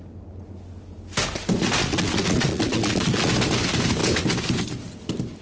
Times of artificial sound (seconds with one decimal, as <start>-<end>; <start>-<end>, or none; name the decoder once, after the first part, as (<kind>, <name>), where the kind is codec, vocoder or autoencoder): 1.8-3.3 (vocoder, Vocos)